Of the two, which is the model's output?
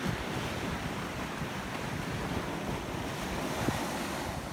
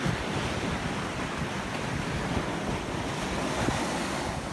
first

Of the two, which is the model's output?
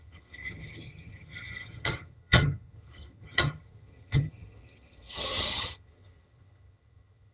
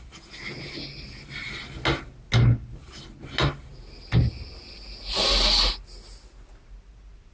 first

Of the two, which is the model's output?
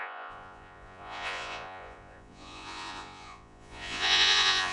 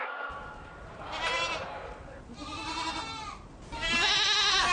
first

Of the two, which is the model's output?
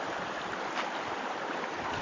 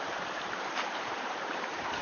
second